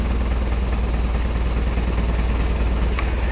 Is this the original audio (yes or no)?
yes